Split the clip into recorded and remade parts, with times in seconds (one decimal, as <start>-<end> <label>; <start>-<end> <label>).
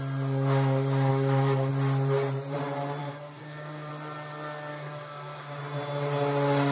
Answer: 0.0-1.1 recorded; 1.1-1.7 remade; 1.7-3.0 recorded; 3.0-3.9 remade; 3.9-4.7 recorded; 4.7-5.6 remade; 5.6-6.7 recorded